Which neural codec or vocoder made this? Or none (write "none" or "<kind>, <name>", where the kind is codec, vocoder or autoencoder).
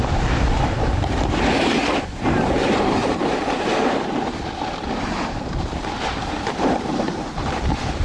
vocoder, BigVGAN v2